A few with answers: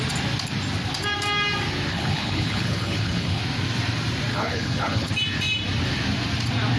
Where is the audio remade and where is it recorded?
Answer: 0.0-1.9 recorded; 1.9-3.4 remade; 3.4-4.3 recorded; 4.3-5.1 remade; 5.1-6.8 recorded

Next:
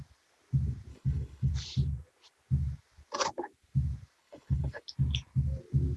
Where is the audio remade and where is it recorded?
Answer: 0.0-0.9 recorded; 0.9-1.5 remade; 1.5-4.2 recorded; 4.2-4.8 remade; 4.8-6.0 recorded

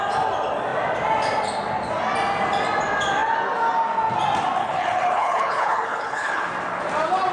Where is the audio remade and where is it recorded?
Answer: 0.0-4.6 recorded; 4.6-6.5 remade; 6.5-7.3 recorded

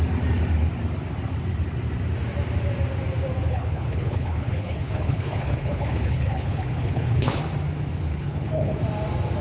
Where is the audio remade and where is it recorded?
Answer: 0.0-3.5 recorded; 3.5-7.4 remade; 7.4-8.1 recorded; 8.1-8.8 remade; 8.8-9.4 recorded

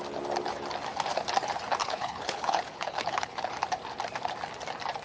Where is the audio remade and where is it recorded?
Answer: 0.0-1.8 recorded; 1.8-3.5 remade; 3.5-5.0 recorded